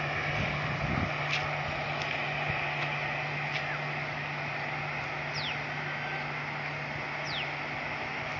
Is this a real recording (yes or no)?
yes